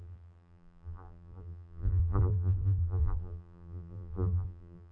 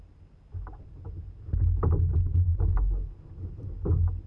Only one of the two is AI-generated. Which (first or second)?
first